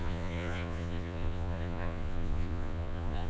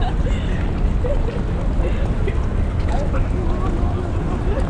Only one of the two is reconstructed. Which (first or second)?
first